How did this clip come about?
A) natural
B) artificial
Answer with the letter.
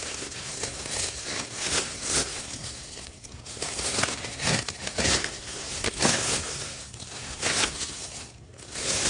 B